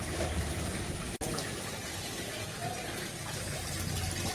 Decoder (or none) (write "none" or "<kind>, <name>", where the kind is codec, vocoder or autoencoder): vocoder, BigVGAN v2